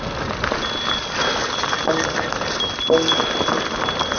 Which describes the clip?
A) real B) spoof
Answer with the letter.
A